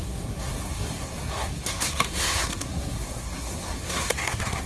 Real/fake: fake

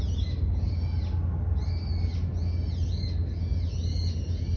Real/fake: real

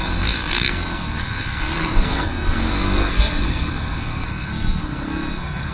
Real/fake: fake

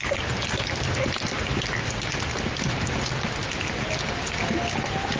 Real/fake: real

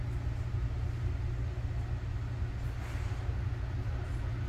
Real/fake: real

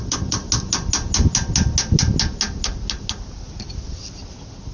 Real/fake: real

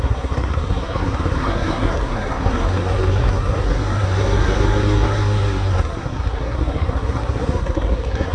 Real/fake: fake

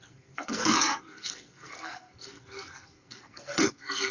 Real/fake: fake